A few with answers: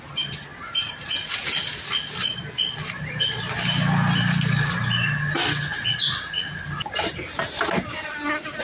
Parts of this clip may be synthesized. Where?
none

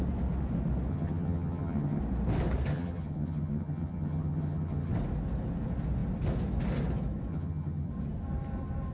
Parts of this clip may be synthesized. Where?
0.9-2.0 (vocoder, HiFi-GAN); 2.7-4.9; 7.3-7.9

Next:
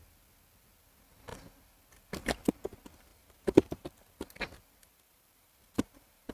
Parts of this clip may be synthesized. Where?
3.1-3.7 (vocoder, BigVGAN v2); 4.8-6.3